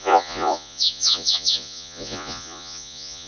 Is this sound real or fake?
fake